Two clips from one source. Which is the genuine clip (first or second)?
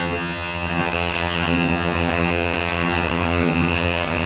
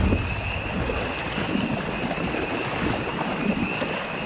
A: second